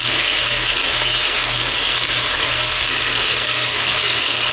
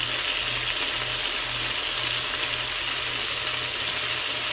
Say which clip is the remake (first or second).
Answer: first